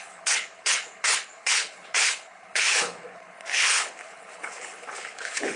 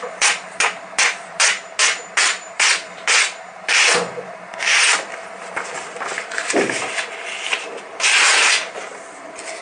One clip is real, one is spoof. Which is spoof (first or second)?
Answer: first